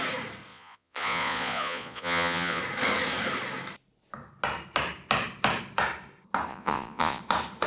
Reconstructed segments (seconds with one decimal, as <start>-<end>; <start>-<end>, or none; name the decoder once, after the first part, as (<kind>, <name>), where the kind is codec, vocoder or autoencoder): 0.5-2.6 (vocoder, Vocos); 6.5-7.2